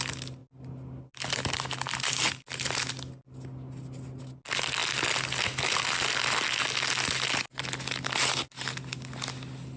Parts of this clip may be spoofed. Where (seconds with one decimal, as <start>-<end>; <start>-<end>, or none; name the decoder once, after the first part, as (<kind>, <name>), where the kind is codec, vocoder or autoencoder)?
none